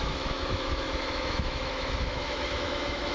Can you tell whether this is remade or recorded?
remade